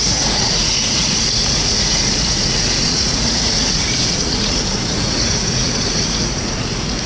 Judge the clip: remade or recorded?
remade